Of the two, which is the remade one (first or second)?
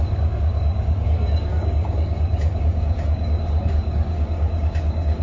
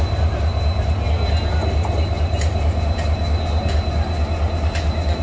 first